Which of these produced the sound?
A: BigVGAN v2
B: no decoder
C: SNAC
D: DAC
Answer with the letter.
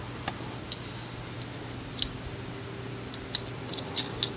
B